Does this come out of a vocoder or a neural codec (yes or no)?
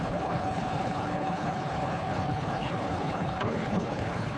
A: yes